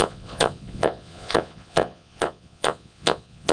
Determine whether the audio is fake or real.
fake